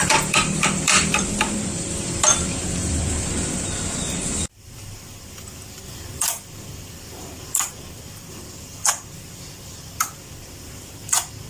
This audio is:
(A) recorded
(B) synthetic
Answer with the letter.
B